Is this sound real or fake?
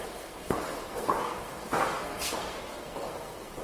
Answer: fake